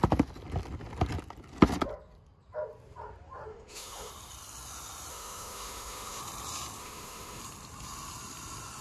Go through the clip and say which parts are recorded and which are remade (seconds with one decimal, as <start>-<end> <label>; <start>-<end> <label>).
0.0-3.5 recorded; 3.5-4.1 remade; 4.1-5.1 recorded; 5.1-6.2 remade; 6.2-6.8 recorded; 6.8-7.4 remade; 7.4-8.8 recorded